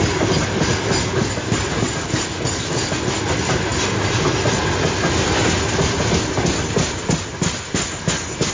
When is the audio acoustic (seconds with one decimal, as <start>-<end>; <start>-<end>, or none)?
0.0-8.5

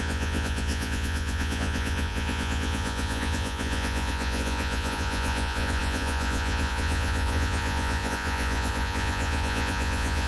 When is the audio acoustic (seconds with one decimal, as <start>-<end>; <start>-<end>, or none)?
none